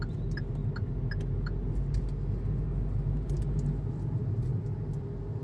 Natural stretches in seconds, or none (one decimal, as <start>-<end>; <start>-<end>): 0.0-5.4